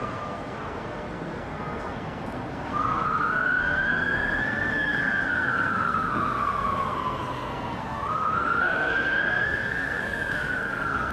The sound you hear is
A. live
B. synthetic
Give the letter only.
B